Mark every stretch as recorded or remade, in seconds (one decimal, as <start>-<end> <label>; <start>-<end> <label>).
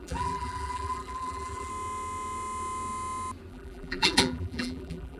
0.0-1.7 remade; 1.7-3.5 recorded; 3.5-5.2 remade